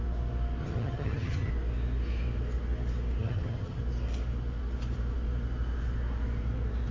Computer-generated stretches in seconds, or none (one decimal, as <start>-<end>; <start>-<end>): 0.6-1.5; 3.2-3.8